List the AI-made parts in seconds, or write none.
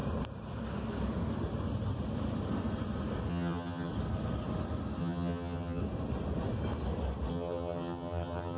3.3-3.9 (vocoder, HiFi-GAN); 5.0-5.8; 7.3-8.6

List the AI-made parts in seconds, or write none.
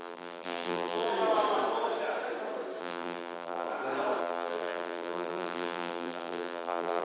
0.0-1.1 (vocoder, BigVGAN v2); 2.8-3.7; 4.2-7.0